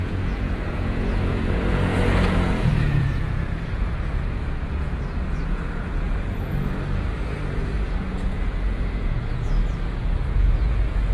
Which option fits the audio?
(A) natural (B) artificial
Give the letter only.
B